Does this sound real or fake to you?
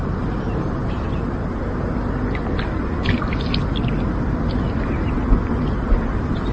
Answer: real